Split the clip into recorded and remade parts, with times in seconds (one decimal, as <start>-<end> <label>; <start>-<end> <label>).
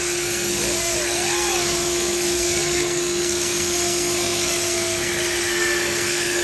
0.0-6.4 remade